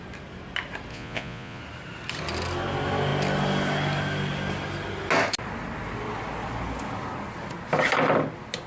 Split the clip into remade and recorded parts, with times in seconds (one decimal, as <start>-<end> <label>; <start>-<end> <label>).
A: 0.0-0.9 recorded; 0.9-1.6 remade; 1.6-8.7 recorded